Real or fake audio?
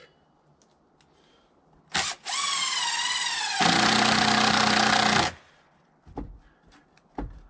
real